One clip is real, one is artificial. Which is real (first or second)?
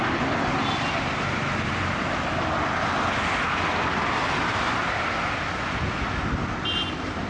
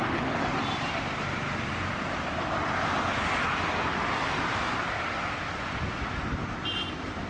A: first